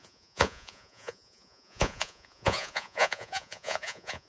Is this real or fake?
fake